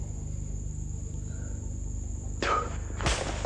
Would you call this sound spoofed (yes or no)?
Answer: no